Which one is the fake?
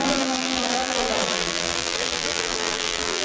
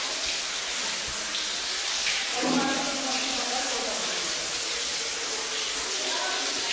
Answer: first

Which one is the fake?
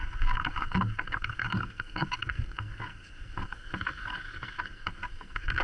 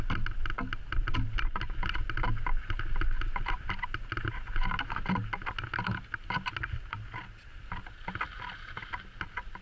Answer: first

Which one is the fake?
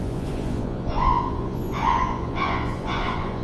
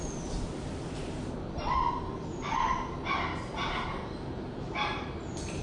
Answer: first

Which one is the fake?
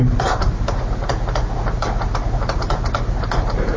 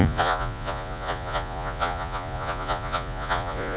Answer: second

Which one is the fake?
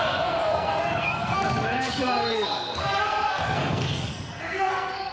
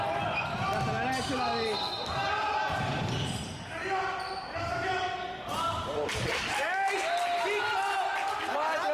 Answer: first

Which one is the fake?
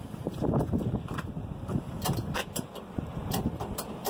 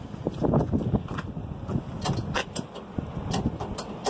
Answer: first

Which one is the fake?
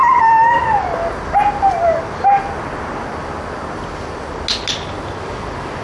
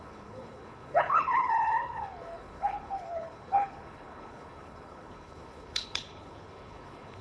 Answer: second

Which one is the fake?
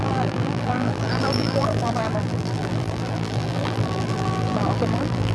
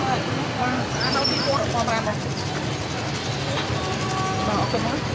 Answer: first